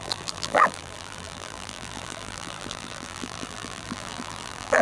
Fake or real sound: fake